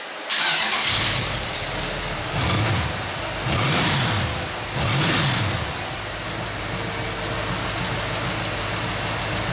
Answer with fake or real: real